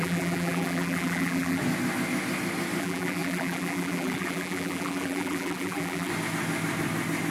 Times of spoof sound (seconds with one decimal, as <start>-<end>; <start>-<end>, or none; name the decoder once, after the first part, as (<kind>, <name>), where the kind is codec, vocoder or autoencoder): 0.0-1.6 (vocoder, BigVGAN v2); 2.8-6.1

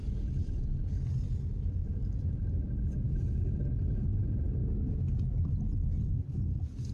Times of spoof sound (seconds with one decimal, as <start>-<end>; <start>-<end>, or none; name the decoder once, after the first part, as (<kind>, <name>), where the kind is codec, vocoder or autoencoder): 1.9-3.7 (vocoder, BigVGAN v2)

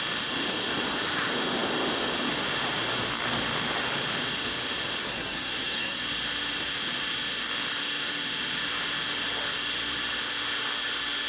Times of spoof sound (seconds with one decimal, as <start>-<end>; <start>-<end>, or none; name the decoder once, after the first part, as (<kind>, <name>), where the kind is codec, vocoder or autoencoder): 5.0-6.0 (codec, SNAC)

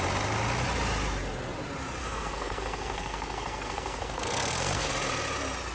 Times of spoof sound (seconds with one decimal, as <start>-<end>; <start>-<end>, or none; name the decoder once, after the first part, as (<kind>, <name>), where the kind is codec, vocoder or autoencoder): 2.0-4.9 (codec, SNAC)